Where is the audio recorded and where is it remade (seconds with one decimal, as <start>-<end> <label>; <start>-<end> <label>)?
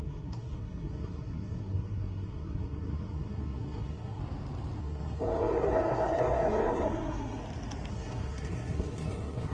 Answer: 0.0-4.2 remade; 4.2-4.8 recorded; 4.8-7.4 remade; 7.4-7.9 recorded; 7.9-9.5 remade